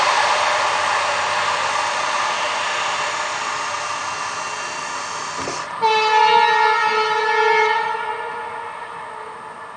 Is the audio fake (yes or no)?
no